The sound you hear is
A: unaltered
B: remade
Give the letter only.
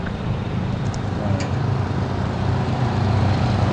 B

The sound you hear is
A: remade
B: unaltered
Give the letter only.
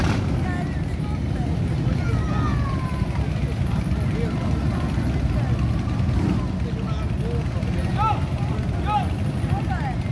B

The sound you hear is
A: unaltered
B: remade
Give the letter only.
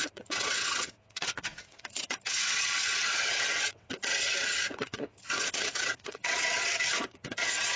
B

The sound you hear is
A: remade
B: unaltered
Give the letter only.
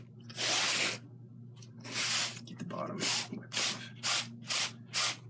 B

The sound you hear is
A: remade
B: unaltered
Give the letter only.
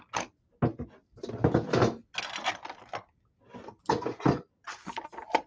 B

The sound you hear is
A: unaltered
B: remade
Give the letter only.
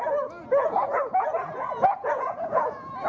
B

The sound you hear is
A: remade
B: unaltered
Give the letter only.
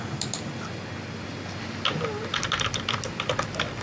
B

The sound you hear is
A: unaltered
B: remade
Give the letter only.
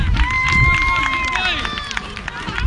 A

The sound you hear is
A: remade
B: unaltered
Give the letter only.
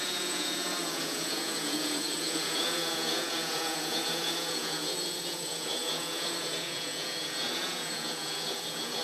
A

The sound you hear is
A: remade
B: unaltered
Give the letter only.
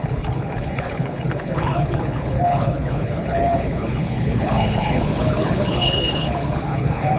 A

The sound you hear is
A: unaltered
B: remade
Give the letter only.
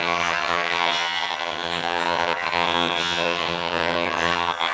B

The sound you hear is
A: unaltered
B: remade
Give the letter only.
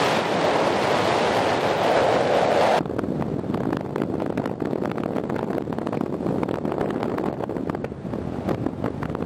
A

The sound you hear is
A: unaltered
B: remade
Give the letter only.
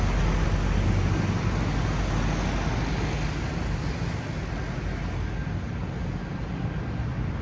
A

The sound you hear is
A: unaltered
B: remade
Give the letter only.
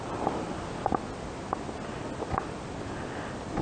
A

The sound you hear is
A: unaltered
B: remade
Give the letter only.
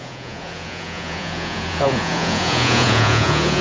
B